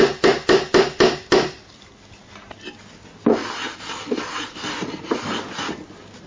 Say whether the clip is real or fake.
real